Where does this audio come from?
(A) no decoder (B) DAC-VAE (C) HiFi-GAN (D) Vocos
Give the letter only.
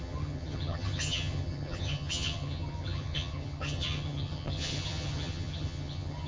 C